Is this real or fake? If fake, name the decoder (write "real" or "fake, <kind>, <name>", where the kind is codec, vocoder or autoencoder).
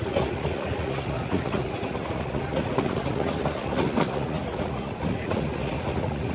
fake, vocoder, Vocos